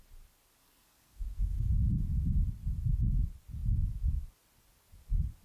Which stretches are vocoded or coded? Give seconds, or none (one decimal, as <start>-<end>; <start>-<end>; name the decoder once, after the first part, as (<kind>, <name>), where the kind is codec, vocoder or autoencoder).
0.6-1.7 (codec, SNAC)